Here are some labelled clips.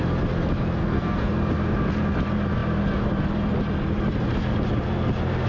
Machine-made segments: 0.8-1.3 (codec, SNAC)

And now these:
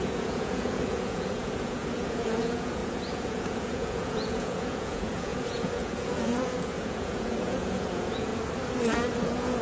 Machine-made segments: 0.0-8.3 (vocoder, Vocos); 9.2-9.6

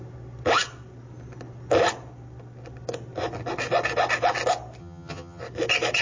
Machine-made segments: 4.8-5.4 (vocoder, HiFi-GAN)